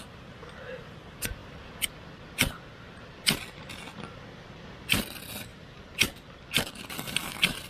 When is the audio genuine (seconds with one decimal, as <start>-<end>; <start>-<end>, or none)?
0.0-7.7